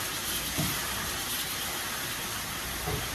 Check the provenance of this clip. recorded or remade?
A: recorded